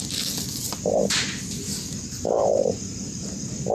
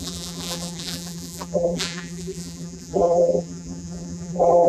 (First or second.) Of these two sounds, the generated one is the second